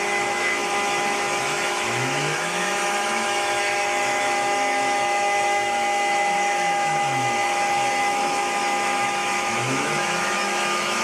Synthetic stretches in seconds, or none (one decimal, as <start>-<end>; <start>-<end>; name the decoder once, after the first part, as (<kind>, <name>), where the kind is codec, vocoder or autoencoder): 0.0-11.0 (autoencoder, DAC-VAE)